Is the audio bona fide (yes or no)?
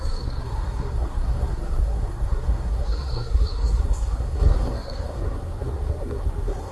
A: no